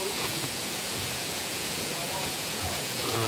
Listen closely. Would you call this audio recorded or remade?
remade